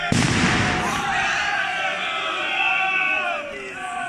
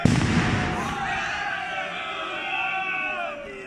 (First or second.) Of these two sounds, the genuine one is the second